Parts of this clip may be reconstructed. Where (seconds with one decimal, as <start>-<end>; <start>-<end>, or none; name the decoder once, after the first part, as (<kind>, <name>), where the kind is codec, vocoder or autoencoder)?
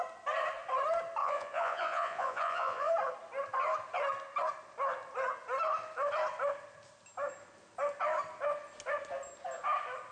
1.2-2.9 (vocoder, Vocos)